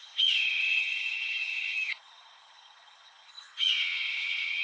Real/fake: fake